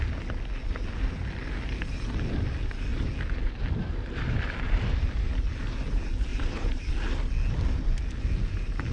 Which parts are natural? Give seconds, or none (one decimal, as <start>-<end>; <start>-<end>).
0.0-6.3; 6.9-8.9